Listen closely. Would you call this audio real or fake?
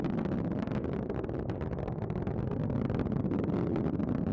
real